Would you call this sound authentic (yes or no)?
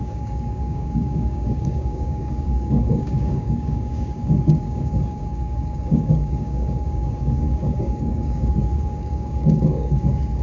no